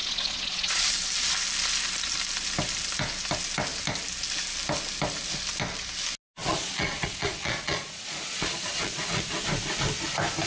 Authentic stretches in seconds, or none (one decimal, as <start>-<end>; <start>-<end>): 0.9-6.4; 9.3-10.5